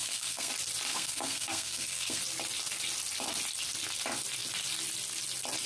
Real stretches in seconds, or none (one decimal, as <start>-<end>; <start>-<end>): 0.5-0.9; 2.2-5.7